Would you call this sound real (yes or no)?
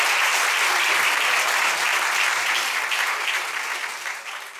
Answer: yes